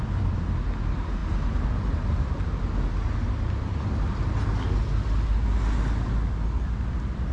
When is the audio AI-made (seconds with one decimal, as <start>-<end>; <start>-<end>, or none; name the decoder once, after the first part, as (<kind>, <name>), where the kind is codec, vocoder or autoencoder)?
none